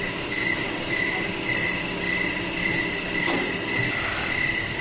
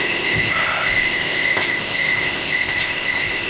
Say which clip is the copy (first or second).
second